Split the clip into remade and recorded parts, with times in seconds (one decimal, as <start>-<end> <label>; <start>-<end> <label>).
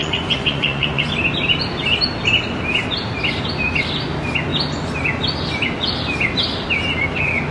0.0-1.0 remade; 1.0-7.5 recorded